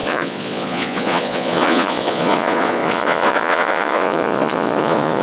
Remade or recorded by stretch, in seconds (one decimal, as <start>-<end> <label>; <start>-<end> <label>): 0.0-5.2 remade

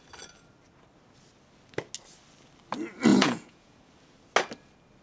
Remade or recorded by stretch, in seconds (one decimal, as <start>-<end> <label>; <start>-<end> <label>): 0.0-3.1 recorded; 3.1-3.9 remade; 3.9-5.0 recorded

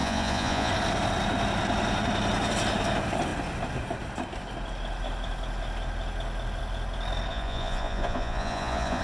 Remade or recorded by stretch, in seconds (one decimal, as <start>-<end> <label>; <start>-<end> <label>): 0.0-0.7 remade; 0.7-7.3 recorded; 7.3-9.0 remade

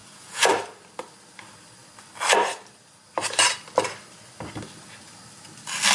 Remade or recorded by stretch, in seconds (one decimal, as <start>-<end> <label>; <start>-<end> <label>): 0.0-0.5 remade; 0.5-5.9 recorded

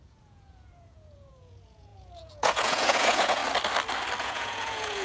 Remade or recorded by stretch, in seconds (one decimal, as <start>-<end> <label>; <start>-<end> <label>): 0.0-3.4 remade; 3.4-4.2 recorded; 4.2-5.0 remade

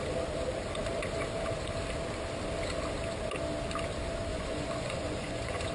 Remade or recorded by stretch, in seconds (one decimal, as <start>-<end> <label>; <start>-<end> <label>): 0.0-4.3 recorded; 4.3-5.7 remade